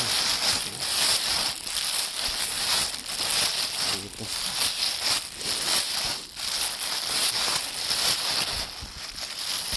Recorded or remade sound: recorded